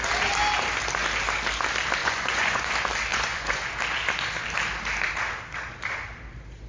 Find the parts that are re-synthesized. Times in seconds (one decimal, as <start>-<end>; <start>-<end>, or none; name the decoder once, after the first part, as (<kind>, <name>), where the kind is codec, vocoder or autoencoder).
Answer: 2.0-2.7 (vocoder, Vocos); 3.1-3.6